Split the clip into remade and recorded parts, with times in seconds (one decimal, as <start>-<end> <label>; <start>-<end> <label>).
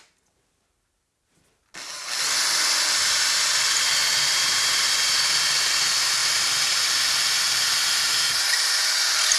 0.0-9.4 recorded